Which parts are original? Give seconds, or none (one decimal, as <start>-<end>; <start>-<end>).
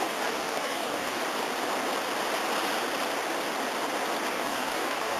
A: 1.2-4.3